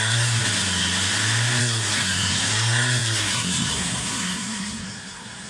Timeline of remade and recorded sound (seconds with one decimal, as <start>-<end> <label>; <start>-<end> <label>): 0.0-0.4 remade; 0.4-1.6 recorded; 1.6-5.5 remade